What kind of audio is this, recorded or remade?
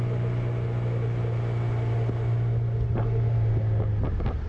recorded